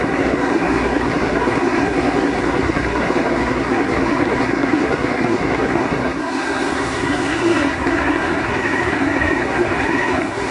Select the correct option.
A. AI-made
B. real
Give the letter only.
A